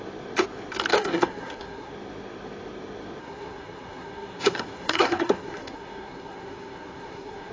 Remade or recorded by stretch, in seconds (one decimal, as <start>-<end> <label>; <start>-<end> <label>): 0.0-0.9 recorded; 0.9-1.9 remade; 1.9-3.2 recorded; 3.2-7.5 remade